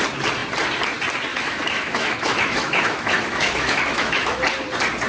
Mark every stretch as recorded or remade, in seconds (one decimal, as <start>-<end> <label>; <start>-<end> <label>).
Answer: 0.0-1.3 recorded; 1.3-4.4 remade; 4.4-5.1 recorded